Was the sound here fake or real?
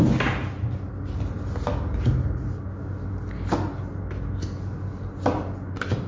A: real